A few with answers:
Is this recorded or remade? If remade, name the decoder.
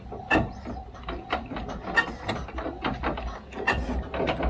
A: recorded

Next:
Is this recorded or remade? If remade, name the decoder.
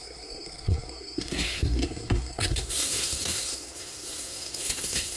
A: remade, codec, SNAC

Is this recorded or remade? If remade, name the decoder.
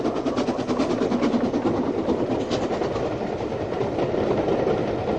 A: recorded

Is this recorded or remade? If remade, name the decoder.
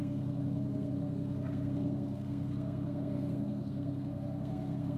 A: remade, codec, SNAC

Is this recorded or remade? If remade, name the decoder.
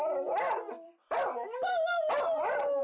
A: recorded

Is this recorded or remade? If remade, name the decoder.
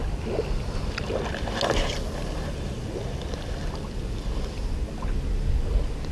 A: recorded